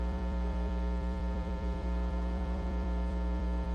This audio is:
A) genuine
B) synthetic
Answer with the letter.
B